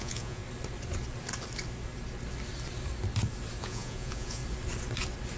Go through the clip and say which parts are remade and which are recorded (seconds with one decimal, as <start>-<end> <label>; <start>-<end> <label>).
0.0-0.4 remade; 0.4-3.6 recorded; 3.6-4.4 remade; 4.4-5.4 recorded